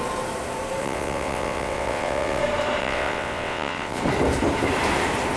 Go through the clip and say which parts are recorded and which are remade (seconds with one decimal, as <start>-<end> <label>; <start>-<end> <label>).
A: 0.0-0.8 recorded; 0.8-2.4 remade; 2.4-2.8 recorded; 2.8-4.0 remade; 4.0-5.4 recorded